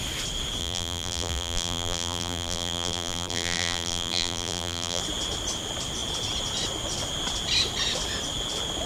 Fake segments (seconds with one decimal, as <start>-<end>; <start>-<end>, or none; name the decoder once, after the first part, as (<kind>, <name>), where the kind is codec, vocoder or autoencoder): 0.6-5.0 (vocoder, BigVGAN v2)